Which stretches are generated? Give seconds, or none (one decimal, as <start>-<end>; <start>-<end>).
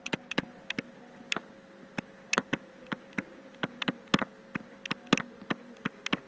none